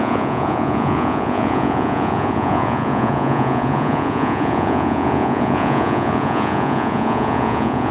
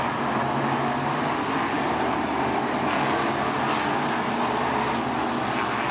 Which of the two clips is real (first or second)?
second